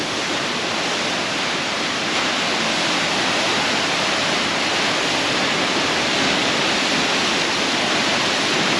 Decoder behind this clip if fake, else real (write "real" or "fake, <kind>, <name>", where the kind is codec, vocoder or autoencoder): fake, vocoder, BigVGAN v2